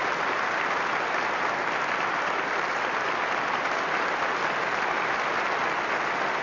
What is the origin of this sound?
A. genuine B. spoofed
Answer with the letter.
A